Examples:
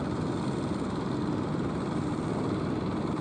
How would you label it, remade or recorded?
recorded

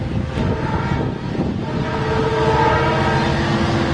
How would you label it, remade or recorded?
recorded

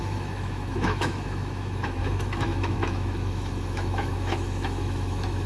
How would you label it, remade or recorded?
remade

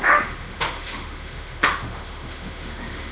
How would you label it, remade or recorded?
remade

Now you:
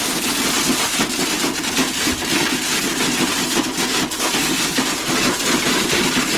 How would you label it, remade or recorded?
recorded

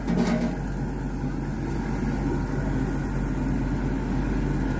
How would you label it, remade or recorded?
recorded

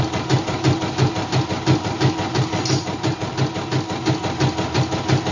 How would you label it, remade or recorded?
recorded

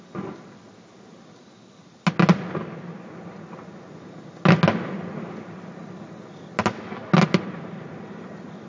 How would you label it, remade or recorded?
recorded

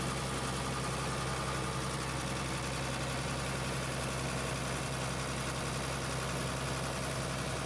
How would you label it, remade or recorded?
recorded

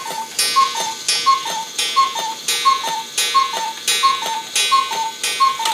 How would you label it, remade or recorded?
recorded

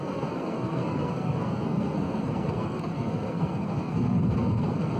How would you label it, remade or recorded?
remade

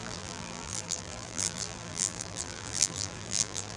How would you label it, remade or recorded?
remade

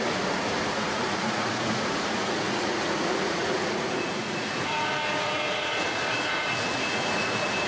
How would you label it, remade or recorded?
remade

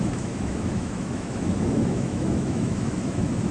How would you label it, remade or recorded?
remade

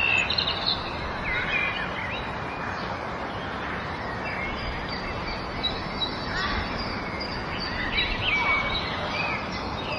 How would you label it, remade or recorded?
recorded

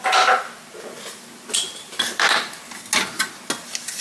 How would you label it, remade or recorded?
recorded